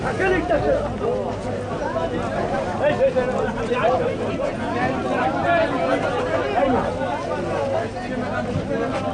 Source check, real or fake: real